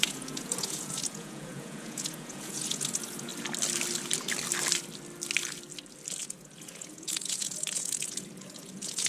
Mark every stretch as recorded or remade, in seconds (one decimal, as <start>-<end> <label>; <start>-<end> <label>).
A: 0.0-3.3 remade; 3.3-6.2 recorded; 6.2-9.1 remade

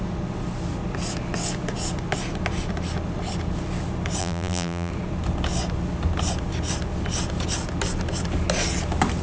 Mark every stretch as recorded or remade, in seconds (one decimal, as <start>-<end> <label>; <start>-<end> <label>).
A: 0.0-4.2 recorded; 4.2-4.9 remade; 4.9-9.2 recorded

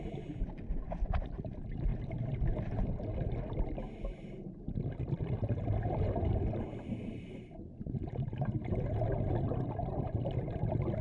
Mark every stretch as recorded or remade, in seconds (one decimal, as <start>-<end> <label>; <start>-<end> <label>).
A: 0.0-11.0 recorded